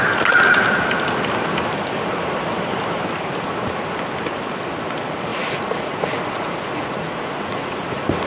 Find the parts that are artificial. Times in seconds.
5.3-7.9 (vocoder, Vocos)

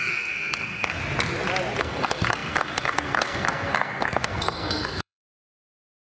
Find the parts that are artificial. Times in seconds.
0.0-1.0 (codec, SNAC); 1.8-6.1

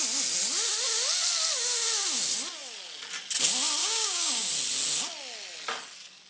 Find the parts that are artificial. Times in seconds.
3.8-4.5 (codec, DAC)

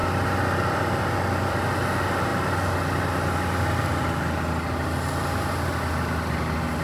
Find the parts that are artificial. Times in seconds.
none

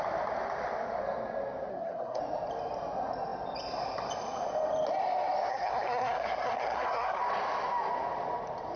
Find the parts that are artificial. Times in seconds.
1.7-2.2 (codec, SNAC); 5.5-7.2